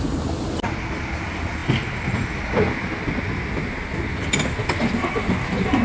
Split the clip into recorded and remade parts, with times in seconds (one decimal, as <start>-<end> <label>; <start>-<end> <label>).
0.0-5.8 recorded